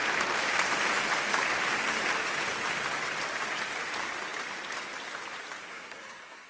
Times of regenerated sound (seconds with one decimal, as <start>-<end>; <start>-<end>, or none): 5.7-6.5